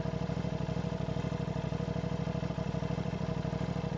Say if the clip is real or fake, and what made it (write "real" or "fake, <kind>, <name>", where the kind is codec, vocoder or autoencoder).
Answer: real